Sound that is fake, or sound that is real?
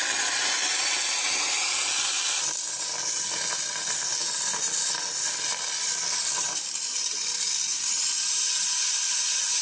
real